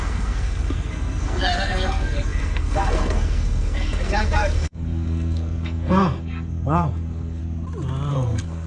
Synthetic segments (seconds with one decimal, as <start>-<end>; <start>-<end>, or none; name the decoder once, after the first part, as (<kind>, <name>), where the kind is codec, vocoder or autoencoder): 0.0-7.4 (codec, SNAC); 8.1-8.7